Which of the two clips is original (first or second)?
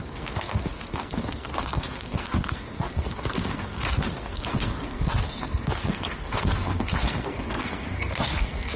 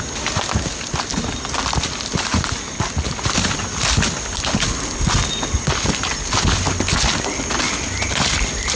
second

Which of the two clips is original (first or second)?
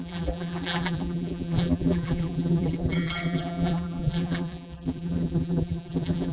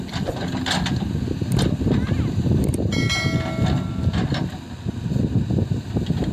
second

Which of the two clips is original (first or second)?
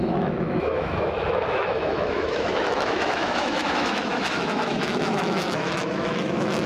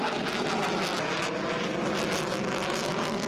second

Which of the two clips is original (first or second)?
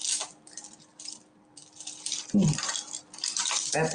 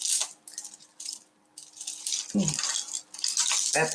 second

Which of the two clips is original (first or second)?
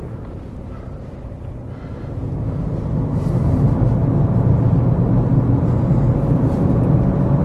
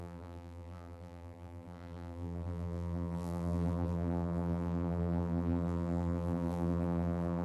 first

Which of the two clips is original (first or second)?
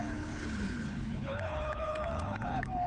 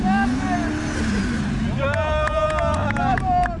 second